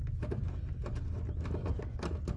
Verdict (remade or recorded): recorded